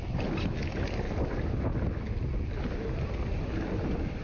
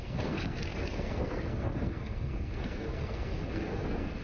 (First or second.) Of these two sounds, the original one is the first